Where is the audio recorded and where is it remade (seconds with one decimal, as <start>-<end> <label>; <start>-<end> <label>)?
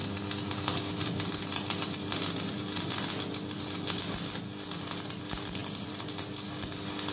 0.0-7.1 recorded